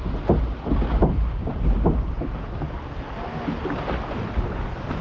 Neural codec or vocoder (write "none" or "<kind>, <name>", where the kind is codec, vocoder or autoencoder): none